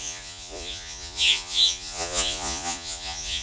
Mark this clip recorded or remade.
remade